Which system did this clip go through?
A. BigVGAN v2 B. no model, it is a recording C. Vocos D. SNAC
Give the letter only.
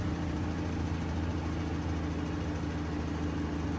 B